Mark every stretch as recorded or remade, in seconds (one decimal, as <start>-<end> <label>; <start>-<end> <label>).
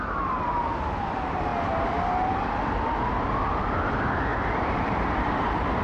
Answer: 0.0-1.5 remade; 1.5-3.7 recorded; 3.7-5.8 remade